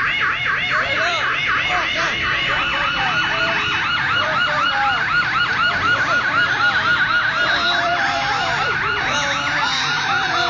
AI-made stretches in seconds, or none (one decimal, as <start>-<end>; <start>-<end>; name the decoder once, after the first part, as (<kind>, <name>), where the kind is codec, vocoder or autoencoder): 0.0-10.5 (vocoder, BigVGAN v2)